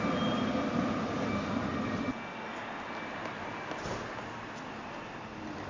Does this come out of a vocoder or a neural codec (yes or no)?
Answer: no